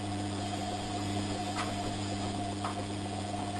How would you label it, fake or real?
fake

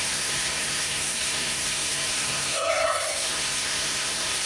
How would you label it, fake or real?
fake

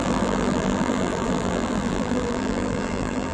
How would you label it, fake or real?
fake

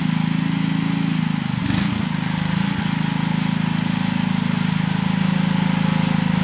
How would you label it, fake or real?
real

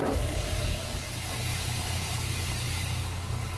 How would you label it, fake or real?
fake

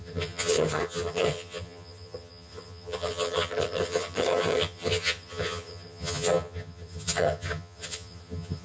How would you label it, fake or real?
fake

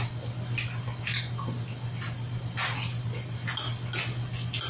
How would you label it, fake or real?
real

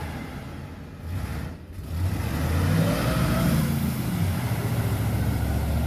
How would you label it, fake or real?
real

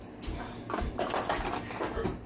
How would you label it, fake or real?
real